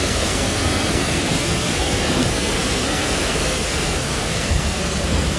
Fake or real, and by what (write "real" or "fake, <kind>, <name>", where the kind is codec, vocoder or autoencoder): fake, codec, SNAC